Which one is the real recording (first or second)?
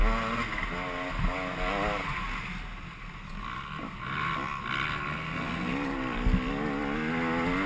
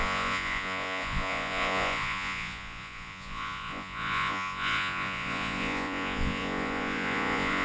first